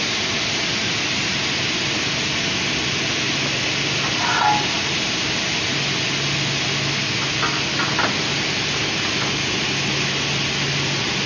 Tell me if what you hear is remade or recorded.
recorded